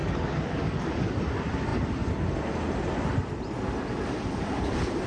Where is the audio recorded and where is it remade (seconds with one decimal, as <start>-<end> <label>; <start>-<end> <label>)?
0.0-1.2 remade; 1.2-5.1 recorded